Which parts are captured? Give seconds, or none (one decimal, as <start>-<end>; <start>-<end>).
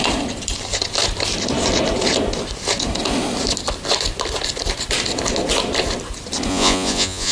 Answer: 0.0-6.5